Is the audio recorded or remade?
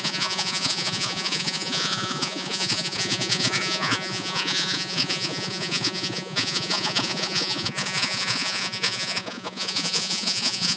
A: remade